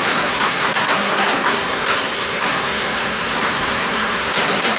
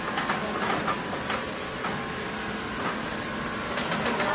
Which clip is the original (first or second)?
second